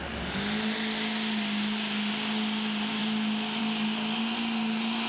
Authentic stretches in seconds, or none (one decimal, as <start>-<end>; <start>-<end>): 0.0-5.1